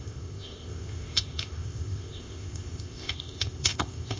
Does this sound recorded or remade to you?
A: remade